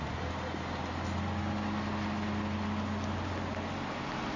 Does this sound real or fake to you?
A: real